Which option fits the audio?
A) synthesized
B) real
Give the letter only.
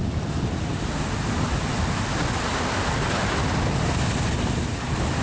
B